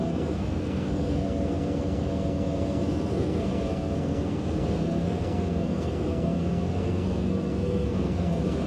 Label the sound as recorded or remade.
remade